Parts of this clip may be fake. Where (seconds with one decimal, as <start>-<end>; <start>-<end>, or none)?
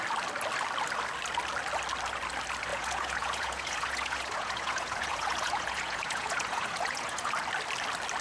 2.7-7.3